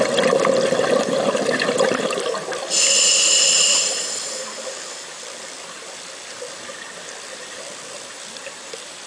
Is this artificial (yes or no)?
no